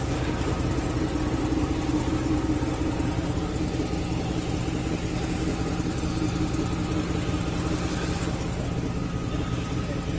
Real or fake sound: real